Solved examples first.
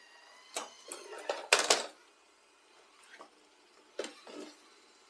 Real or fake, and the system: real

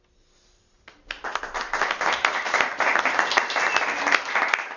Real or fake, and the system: real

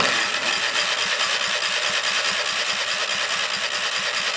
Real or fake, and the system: real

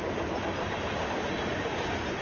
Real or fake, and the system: real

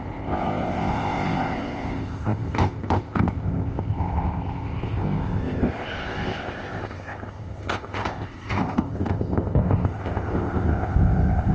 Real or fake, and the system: fake, codec, ZipCodec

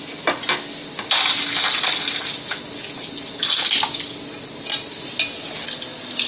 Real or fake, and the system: real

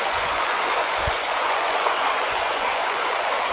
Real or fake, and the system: fake, vocoder, Vocos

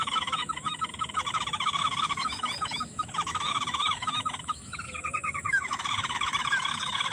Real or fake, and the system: fake, autoencoder, DAC-VAE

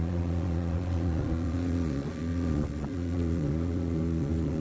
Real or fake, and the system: fake, vocoder, Vocos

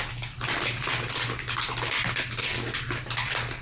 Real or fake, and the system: real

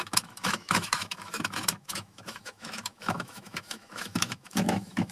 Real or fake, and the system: fake, autoencoder, DAC-VAE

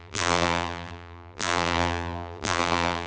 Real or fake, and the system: fake, vocoder, BigVGAN v2